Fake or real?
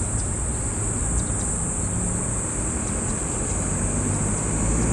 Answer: real